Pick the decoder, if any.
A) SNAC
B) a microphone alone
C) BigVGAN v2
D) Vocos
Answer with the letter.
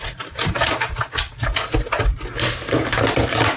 B